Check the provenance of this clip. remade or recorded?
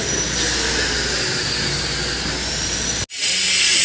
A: recorded